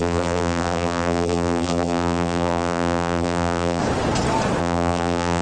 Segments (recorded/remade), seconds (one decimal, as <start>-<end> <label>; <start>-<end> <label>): 0.0-3.8 remade; 3.8-4.6 recorded; 4.6-5.4 remade